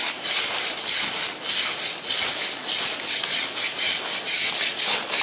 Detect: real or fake real